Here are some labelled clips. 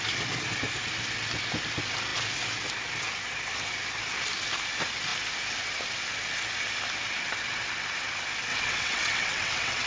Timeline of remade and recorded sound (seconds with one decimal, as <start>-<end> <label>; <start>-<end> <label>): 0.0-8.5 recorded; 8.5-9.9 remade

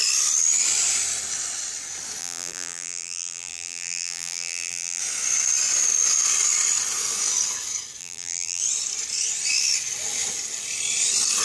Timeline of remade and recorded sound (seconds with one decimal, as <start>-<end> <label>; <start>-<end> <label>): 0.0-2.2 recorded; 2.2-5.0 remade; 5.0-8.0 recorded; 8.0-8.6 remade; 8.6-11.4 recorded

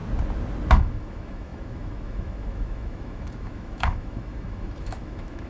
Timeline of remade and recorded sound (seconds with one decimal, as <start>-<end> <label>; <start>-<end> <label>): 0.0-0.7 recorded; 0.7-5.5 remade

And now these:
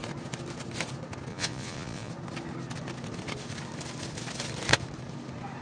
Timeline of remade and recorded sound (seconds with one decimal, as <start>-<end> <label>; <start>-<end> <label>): 0.0-1.3 recorded; 1.3-2.1 remade; 2.1-5.6 recorded

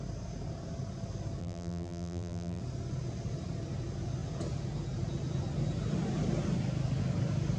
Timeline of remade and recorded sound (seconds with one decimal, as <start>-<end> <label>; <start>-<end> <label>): 0.0-1.4 recorded; 1.4-2.6 remade; 2.6-7.6 recorded

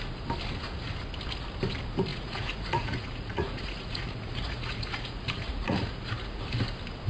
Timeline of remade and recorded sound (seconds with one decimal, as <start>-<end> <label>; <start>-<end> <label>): 0.0-2.1 recorded; 2.1-6.4 remade; 6.4-7.1 recorded

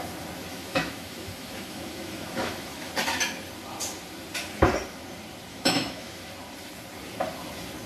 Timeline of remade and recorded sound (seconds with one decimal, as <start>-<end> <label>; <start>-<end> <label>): 0.0-0.5 recorded; 0.5-2.9 remade; 2.9-5.5 recorded; 5.5-6.3 remade; 6.3-7.9 recorded

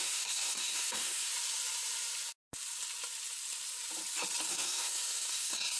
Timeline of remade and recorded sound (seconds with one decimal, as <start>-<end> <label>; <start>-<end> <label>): 0.0-1.3 remade; 1.3-4.5 recorded; 4.5-5.8 remade